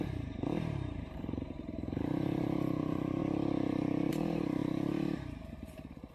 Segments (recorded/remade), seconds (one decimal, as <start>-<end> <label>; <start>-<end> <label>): 0.0-3.2 remade; 3.2-4.1 recorded; 4.1-6.1 remade